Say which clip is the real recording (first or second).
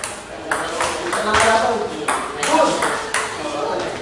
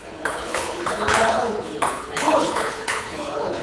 first